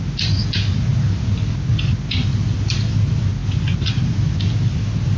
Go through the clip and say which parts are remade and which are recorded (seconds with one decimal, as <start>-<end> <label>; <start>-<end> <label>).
0.0-5.2 recorded